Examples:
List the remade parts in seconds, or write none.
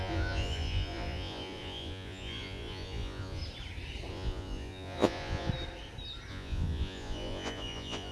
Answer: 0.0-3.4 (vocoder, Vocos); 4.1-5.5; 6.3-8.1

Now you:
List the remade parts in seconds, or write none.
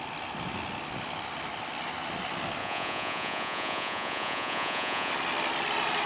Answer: 2.6-5.1 (vocoder, Vocos)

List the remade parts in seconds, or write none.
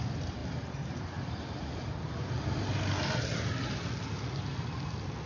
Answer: 0.4-2.2 (vocoder, BigVGAN v2)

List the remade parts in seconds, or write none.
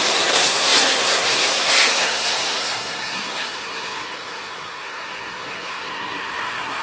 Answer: 0.0-6.8 (codec, SNAC)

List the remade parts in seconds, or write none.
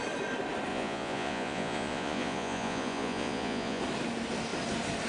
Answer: 0.7-3.8 (vocoder, Vocos)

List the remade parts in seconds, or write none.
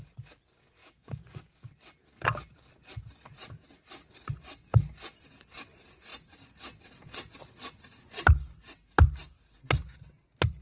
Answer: 0.8-1.7 (vocoder, Vocos)